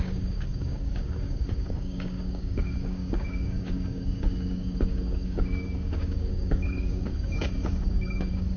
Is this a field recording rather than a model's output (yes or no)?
no